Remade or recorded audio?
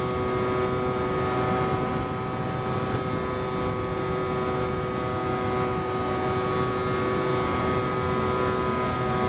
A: recorded